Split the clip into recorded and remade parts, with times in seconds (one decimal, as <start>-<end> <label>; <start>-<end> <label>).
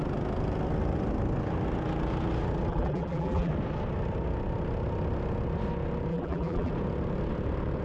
0.0-2.7 recorded; 2.7-3.5 remade; 3.5-6.1 recorded; 6.1-6.7 remade; 6.7-7.8 recorded